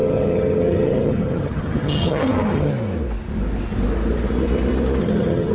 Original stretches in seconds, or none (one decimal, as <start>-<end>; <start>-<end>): 2.7-5.0